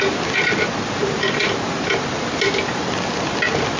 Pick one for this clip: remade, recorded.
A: recorded